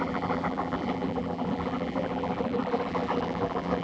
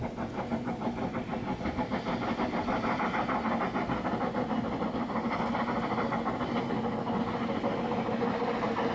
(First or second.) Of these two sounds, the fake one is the first